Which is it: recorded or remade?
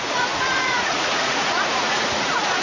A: remade